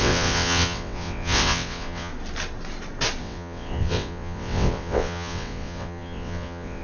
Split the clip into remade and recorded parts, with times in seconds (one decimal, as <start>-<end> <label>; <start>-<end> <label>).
0.0-2.1 remade; 2.1-3.2 recorded; 3.2-6.8 remade